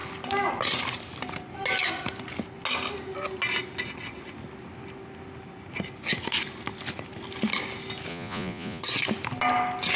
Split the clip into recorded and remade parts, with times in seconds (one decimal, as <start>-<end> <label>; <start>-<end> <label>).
0.0-8.1 recorded; 8.1-8.8 remade; 8.8-10.0 recorded